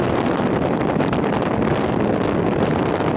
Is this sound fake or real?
real